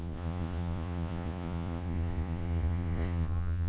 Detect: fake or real fake